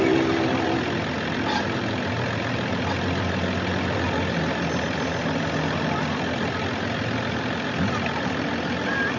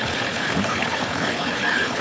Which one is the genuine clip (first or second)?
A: first